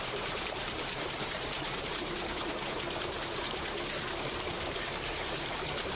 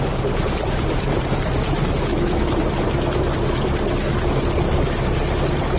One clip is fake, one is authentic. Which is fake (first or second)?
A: first